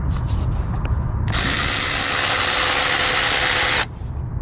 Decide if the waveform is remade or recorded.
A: recorded